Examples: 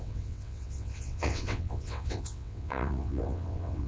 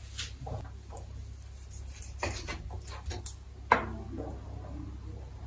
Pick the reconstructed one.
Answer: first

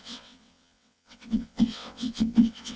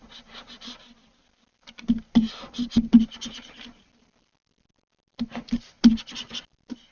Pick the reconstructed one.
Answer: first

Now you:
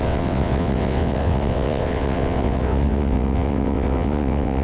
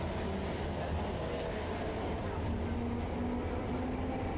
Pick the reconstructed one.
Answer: first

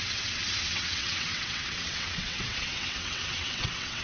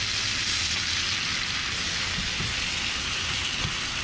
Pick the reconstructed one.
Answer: first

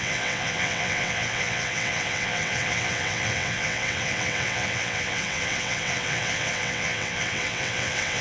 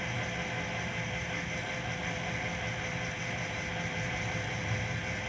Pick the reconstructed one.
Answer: first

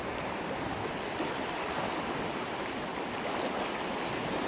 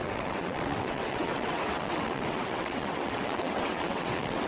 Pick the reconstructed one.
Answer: second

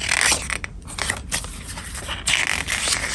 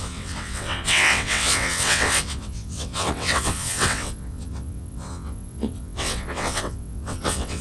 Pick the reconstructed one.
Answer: second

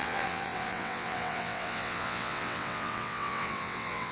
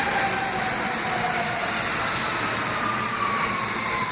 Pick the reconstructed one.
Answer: first